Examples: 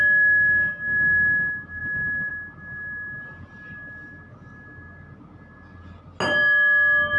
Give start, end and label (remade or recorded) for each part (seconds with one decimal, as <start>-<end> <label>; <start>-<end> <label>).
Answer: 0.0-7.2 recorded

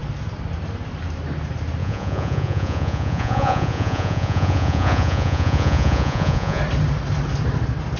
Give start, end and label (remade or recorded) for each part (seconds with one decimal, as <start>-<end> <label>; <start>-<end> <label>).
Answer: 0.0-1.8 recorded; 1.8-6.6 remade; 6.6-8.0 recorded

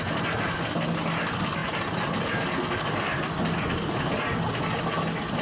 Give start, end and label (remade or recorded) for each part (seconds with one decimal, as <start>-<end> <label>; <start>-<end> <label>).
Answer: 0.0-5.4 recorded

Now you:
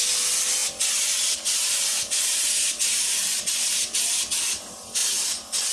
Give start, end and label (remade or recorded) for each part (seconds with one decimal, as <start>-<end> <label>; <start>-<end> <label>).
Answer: 0.0-5.7 recorded